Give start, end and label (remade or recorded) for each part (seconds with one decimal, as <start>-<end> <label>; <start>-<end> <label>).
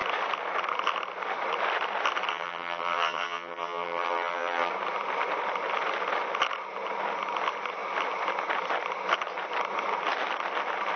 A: 0.0-2.3 recorded; 2.3-4.7 remade; 4.7-11.0 recorded